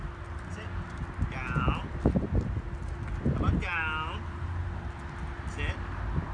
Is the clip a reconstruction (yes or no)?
no